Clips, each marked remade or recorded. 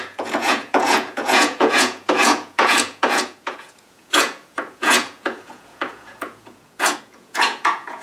remade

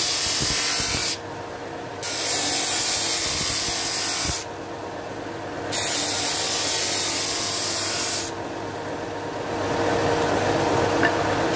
recorded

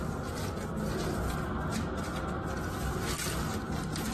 recorded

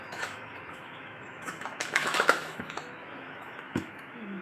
remade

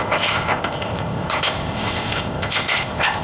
remade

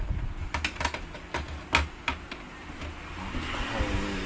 recorded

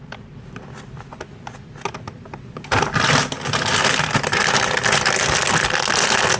recorded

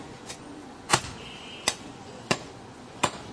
remade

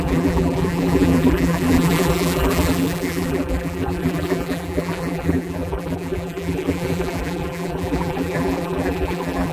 remade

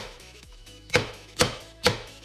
remade